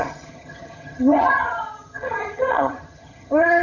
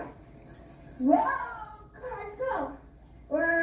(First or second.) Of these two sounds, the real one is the second